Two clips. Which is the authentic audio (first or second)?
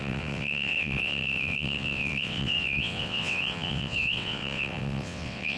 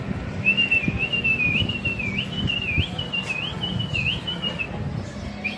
second